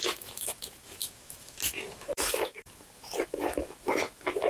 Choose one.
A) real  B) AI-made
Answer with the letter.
B